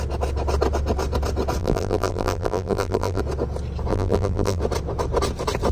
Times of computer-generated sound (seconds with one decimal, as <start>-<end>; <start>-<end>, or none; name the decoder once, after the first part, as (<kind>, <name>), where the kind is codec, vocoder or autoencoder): 1.6-3.2 (vocoder, BigVGAN v2); 3.9-4.6